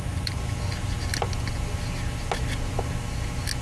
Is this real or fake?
real